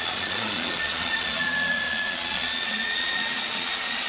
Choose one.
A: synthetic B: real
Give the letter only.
A